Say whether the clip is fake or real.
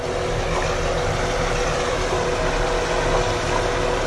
real